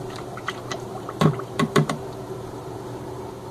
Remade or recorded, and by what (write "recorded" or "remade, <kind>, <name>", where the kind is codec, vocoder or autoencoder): remade, vocoder, BigVGAN v2